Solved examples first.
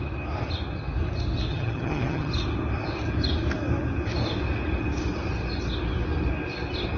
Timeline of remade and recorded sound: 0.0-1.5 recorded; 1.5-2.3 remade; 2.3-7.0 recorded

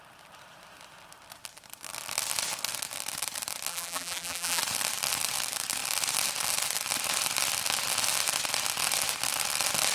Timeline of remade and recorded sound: 0.0-3.7 recorded; 3.7-4.6 remade; 4.6-9.9 recorded

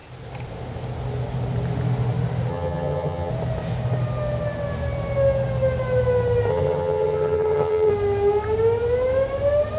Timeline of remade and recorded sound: 0.0-2.5 recorded; 2.5-3.3 remade; 3.3-6.5 recorded; 6.5-7.9 remade; 7.9-9.8 recorded